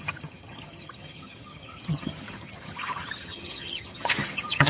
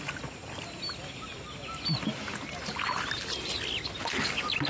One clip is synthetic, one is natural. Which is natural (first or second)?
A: second